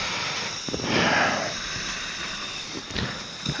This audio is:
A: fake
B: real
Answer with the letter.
A